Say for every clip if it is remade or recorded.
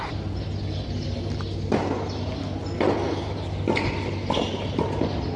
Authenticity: recorded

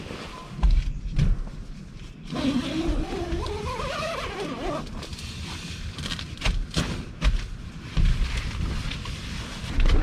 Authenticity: recorded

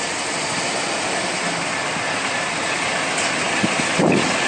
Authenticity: recorded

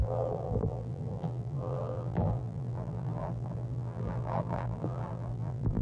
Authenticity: remade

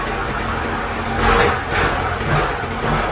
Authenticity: recorded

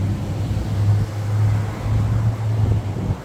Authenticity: recorded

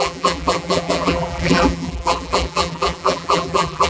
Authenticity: remade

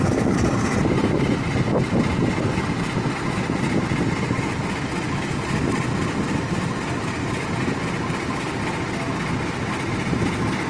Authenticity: recorded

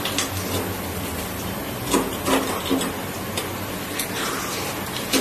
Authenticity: recorded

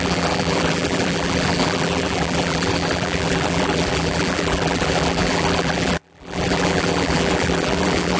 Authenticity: remade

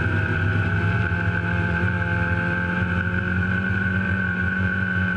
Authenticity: remade